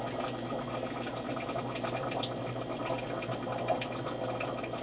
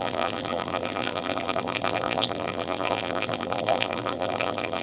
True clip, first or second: first